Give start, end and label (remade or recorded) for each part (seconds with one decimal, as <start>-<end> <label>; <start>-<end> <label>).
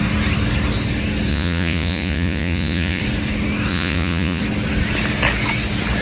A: 0.0-1.3 recorded; 1.3-3.0 remade; 3.0-3.7 recorded; 3.7-4.4 remade; 4.4-6.0 recorded